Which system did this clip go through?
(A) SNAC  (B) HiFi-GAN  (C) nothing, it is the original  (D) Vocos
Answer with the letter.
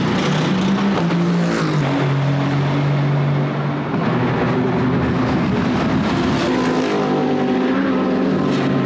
C